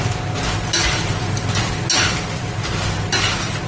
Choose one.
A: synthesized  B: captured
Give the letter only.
B